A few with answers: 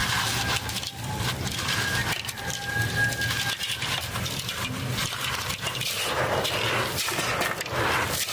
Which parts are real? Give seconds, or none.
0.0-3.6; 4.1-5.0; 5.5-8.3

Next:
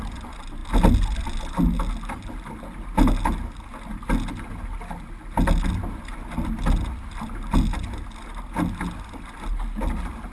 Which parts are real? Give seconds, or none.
0.0-10.3

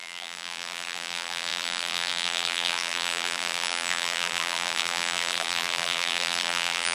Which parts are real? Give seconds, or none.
none

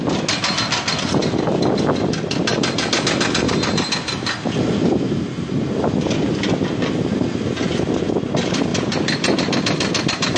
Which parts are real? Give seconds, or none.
0.0-8.7

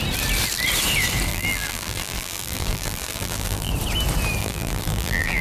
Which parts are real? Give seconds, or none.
0.0-1.3; 3.7-4.4

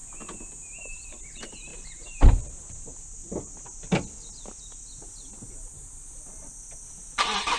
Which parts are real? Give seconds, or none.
0.0-1.1; 3.2-6.9

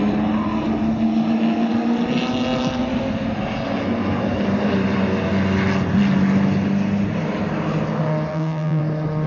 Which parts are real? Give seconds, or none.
0.0-8.3; 8.8-9.3

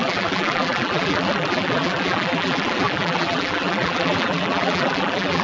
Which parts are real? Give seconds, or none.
none